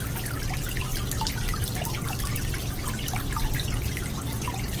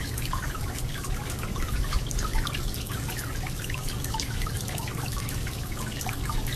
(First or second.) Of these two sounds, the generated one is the second